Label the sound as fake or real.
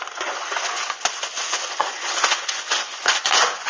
fake